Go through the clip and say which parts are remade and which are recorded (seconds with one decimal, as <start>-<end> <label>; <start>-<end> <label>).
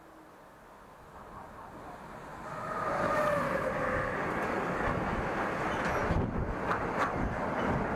0.0-8.0 recorded